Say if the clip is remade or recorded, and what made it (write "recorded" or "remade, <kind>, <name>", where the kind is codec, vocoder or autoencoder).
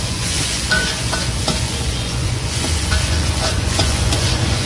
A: remade, vocoder, Vocos